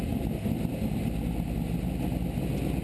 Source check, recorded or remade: recorded